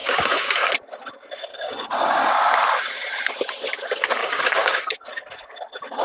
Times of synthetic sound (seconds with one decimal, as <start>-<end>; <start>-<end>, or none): 0.0-0.7; 1.5-2.3; 4.2-4.8

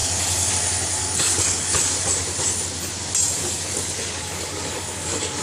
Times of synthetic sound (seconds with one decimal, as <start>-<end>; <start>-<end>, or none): 0.0-0.5; 1.0-1.8; 3.4-5.4

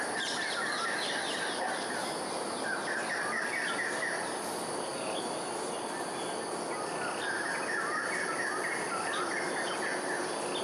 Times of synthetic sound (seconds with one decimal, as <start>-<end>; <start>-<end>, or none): none

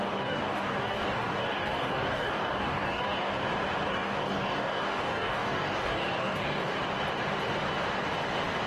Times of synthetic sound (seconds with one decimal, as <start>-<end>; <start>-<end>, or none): 0.0-3.3; 3.9-6.8